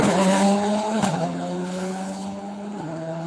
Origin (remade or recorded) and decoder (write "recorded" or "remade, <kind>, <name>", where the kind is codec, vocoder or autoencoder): remade, codec, HILCodec